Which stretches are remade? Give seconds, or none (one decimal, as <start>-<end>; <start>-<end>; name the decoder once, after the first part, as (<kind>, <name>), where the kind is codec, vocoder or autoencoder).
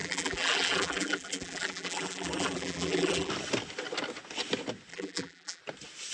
0.0-3.3 (vocoder, BigVGAN v2); 4.9-5.6